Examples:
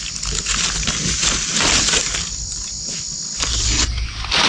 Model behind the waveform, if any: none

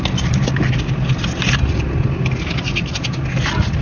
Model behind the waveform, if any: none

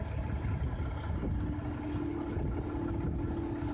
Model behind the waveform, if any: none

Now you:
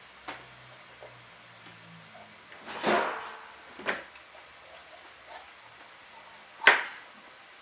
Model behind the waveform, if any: none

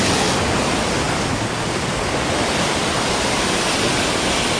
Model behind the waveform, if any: none